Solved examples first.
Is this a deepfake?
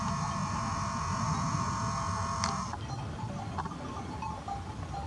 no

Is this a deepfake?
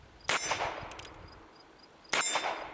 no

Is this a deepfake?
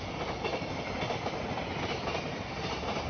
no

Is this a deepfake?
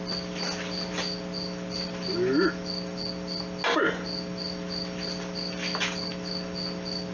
no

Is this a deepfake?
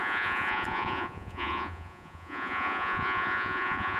yes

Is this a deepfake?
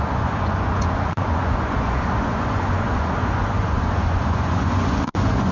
yes